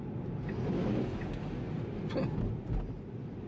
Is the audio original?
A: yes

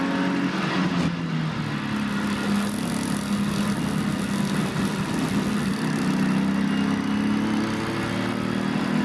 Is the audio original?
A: yes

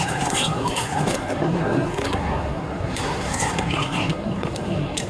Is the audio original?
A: no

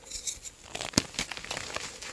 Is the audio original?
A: yes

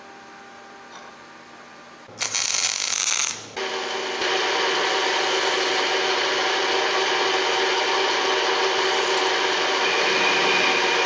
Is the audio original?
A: yes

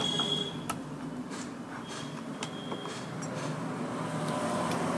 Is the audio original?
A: yes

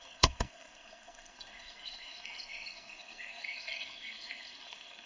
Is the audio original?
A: no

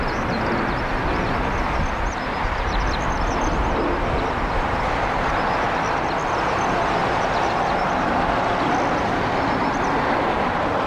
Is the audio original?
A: yes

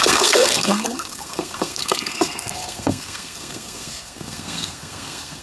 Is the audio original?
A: no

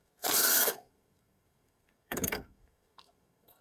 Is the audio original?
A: no